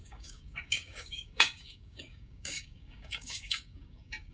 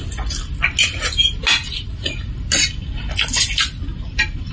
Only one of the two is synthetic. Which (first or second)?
first